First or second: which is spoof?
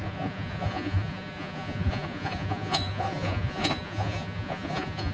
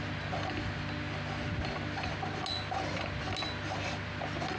first